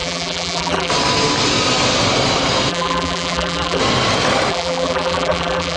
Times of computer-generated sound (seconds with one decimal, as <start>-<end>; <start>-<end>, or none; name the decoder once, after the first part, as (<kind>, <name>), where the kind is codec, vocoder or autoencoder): 0.0-0.9 (vocoder, BigVGAN v2); 2.7-3.8; 4.5-5.8